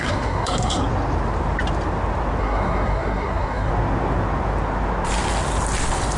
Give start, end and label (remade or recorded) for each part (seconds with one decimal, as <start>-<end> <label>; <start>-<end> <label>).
0.0-0.8 remade; 0.8-2.4 recorded; 2.4-3.7 remade; 3.7-6.2 recorded